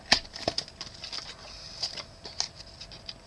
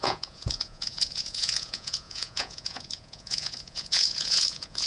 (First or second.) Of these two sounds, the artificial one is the second